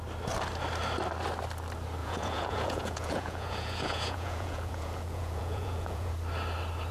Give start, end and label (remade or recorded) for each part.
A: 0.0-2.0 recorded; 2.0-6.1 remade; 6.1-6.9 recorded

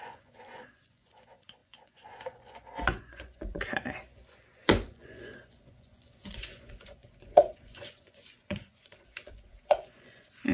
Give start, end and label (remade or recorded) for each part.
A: 0.0-10.5 remade

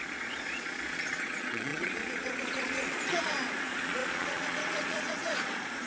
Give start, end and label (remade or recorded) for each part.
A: 0.0-5.9 remade

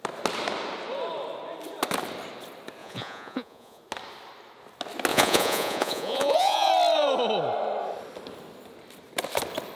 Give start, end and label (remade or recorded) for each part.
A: 0.0-2.8 recorded; 2.8-3.8 remade; 3.8-5.1 recorded; 5.1-6.7 remade; 6.7-9.8 recorded

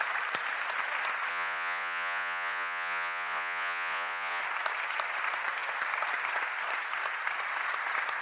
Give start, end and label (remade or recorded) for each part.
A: 0.0-1.3 recorded; 1.3-4.4 remade; 4.4-8.2 recorded